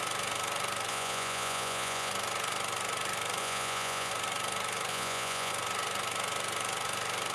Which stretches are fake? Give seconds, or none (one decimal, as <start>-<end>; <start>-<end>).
0.9-2.1; 3.4-4.1; 4.9-5.5